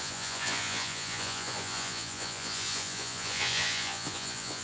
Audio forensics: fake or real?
fake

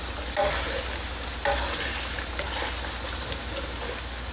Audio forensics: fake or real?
real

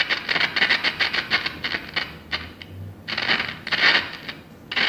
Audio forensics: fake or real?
real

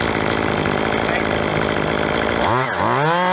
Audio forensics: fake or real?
real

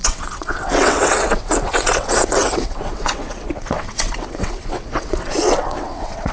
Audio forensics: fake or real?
fake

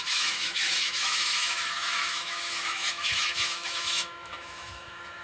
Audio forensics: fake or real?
fake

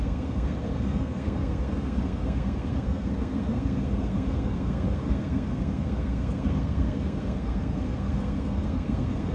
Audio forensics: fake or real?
fake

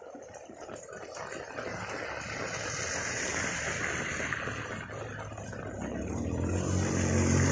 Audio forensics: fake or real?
real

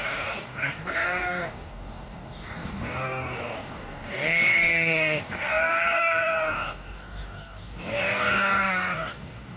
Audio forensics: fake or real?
fake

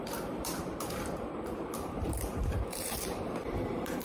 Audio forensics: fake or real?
fake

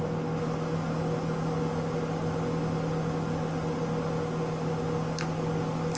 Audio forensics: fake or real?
real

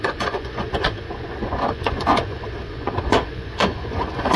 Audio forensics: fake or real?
fake